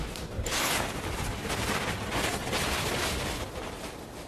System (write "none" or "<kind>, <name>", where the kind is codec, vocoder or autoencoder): none